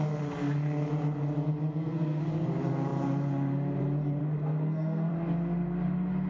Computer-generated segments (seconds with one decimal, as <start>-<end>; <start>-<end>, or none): 1.7-2.2; 4.2-5.1